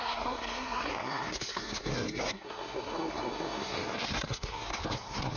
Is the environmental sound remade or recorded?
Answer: remade